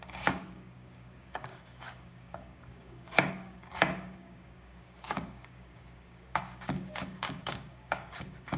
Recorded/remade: remade